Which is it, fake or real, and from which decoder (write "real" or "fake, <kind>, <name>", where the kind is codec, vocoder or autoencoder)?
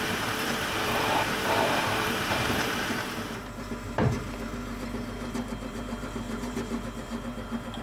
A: fake, vocoder, BigVGAN v2